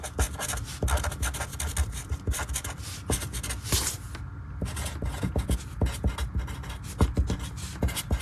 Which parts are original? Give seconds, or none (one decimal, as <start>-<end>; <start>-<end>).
0.0-8.2